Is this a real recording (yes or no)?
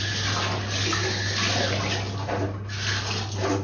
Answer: yes